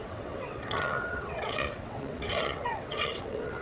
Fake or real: fake